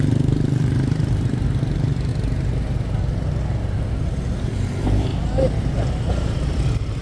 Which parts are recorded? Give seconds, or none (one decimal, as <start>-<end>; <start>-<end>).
2.1-4.0; 5.1-6.1